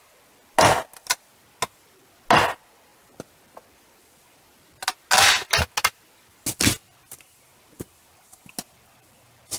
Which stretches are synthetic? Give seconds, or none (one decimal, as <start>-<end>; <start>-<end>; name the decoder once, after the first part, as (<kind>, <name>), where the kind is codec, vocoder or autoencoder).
none